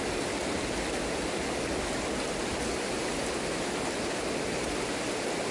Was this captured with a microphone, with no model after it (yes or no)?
yes